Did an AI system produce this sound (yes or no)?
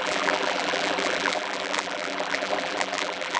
yes